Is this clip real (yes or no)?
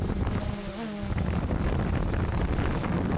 yes